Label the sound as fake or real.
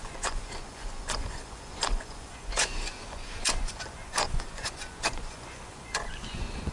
fake